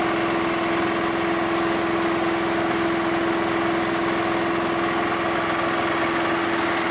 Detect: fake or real real